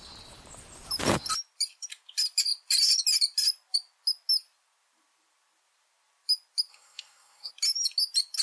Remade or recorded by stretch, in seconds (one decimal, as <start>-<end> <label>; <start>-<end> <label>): 0.0-6.7 recorded; 6.7-7.5 remade; 7.5-8.4 recorded